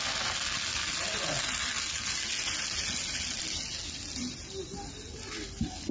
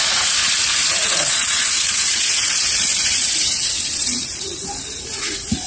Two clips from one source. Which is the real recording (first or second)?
first